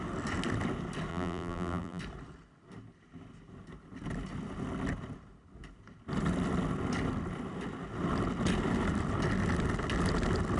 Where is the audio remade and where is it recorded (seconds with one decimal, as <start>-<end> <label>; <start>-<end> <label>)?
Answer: 0.0-1.1 recorded; 1.1-2.0 remade; 2.0-10.6 recorded